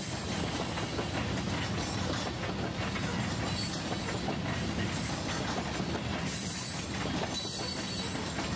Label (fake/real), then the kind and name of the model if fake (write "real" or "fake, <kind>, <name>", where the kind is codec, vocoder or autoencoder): real